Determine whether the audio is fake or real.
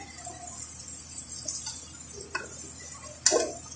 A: real